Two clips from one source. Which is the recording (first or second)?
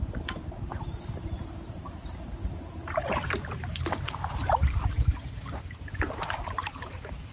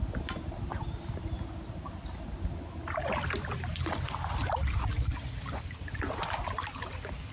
second